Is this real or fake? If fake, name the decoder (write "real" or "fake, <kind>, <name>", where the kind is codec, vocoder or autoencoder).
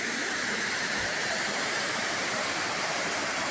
fake, vocoder, BigVGAN v2